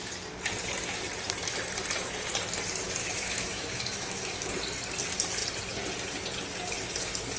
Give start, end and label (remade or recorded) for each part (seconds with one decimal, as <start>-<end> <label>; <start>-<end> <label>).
0.0-3.0 recorded; 3.0-4.5 remade; 4.5-7.4 recorded